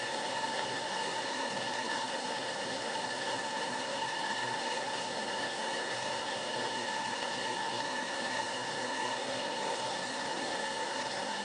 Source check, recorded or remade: remade